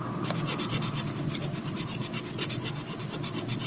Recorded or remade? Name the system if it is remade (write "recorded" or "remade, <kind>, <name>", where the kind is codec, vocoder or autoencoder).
recorded